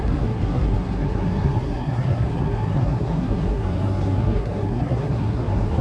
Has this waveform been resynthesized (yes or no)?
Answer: yes